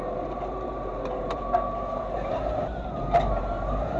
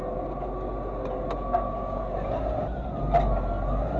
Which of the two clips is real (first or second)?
second